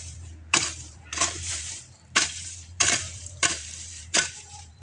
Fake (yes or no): yes